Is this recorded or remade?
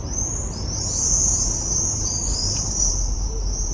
remade